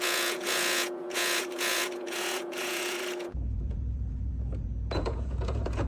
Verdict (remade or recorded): remade